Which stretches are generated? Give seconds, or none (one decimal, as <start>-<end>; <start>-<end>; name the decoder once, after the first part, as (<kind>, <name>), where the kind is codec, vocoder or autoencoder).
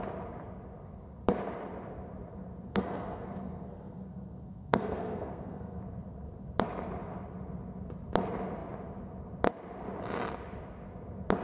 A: 2.7-5.8 (codec, SNAC)